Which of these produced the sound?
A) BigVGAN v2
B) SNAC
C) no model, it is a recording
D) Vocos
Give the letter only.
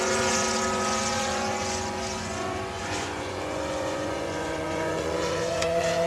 D